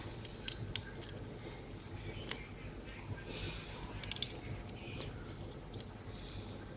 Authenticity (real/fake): real